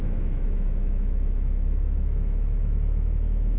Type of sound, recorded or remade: remade